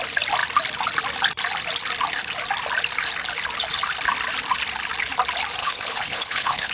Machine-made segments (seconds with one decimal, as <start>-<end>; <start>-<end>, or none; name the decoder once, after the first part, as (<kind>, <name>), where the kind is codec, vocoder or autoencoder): 5.6-6.7 (codec, HILCodec)